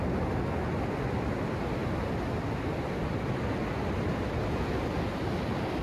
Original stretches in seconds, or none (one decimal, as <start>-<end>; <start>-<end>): 0.0-5.8